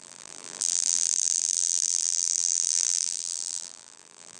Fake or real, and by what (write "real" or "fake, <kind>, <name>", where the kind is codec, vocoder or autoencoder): fake, vocoder, BigVGAN v2